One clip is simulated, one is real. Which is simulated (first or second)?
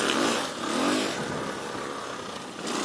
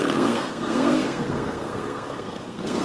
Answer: second